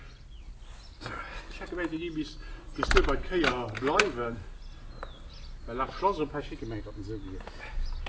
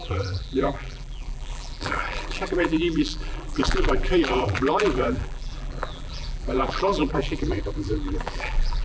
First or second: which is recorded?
first